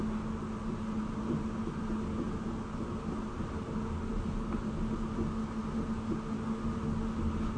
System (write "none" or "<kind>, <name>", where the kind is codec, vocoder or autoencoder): none